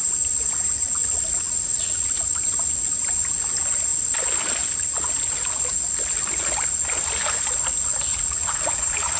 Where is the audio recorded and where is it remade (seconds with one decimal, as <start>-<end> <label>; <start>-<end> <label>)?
0.0-1.0 recorded; 1.0-2.2 remade; 2.2-8.1 recorded; 8.1-9.2 remade